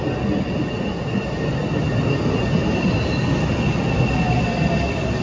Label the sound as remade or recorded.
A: recorded